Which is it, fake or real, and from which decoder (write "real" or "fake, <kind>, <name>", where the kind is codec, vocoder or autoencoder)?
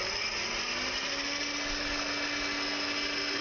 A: real